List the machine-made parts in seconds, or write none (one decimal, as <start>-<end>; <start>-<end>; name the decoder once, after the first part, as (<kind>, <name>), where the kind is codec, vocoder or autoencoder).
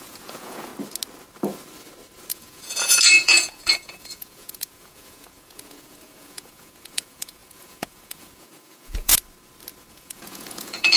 0.0-0.7 (vocoder, Vocos); 2.3-9.1; 9.9-11.0